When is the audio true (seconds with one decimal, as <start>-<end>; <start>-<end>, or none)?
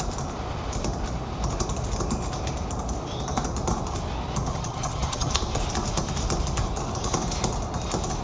0.0-4.5; 5.3-8.2